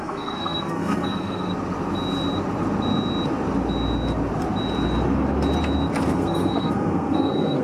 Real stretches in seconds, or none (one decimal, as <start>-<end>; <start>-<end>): 1.5-6.1